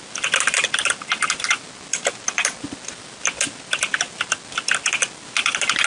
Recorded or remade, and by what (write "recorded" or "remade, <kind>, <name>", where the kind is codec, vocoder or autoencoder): recorded